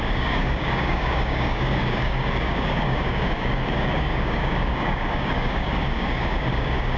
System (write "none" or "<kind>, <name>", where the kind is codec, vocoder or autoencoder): codec, DAC